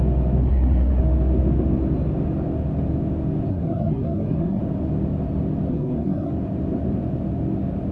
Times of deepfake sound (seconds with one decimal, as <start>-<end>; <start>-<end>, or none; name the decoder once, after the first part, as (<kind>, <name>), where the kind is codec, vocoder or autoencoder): 0.4-1.0 (codec, SNAC); 3.5-4.6; 5.7-6.3